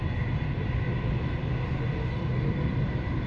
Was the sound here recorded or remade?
recorded